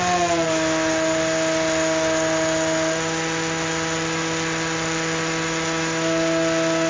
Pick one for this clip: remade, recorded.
recorded